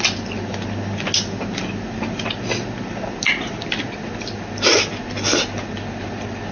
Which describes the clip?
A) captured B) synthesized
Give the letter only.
A